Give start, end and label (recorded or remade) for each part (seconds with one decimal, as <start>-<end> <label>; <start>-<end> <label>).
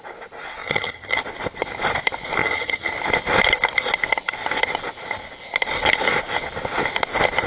0.0-0.6 recorded; 0.6-1.2 remade; 1.2-2.4 recorded; 2.4-2.9 remade; 2.9-7.5 recorded